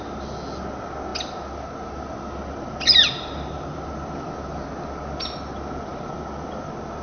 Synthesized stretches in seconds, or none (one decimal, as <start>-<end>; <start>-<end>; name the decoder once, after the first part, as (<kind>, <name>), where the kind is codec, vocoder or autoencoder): none